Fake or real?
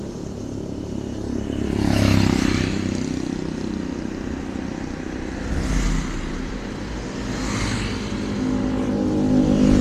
real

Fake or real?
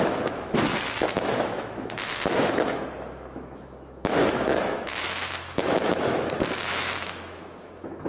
fake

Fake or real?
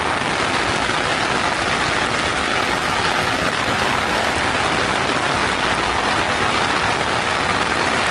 real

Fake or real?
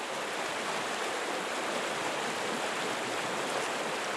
real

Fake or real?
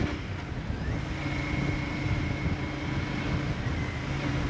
real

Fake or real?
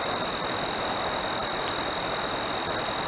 real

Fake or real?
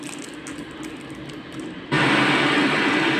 real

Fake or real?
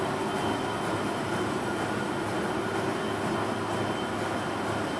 real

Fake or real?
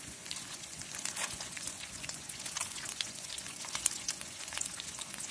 fake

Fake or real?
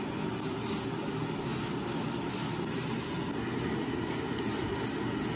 real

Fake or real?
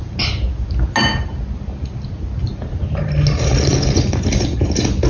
real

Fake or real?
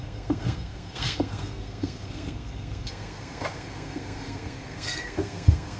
fake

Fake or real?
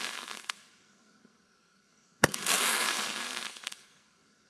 fake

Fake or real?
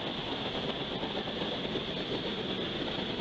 real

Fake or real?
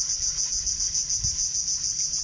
real